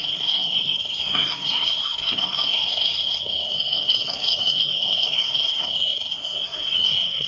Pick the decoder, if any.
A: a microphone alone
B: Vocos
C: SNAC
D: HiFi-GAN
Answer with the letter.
C